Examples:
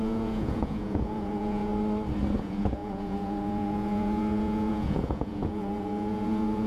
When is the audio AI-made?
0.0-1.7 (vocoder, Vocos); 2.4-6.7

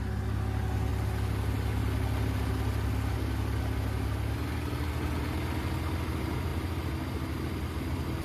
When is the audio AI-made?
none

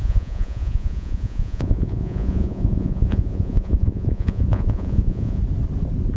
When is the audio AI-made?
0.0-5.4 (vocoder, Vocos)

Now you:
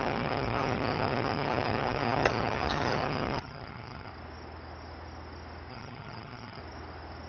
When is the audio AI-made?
0.0-4.1 (vocoder, HiFi-GAN); 5.7-6.6

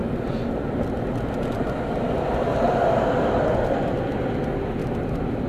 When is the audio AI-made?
none

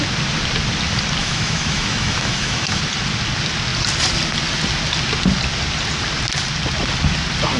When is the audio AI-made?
1.2-2.8 (autoencoder, DAC-VAE)